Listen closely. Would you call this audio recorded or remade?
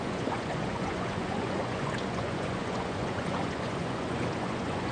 remade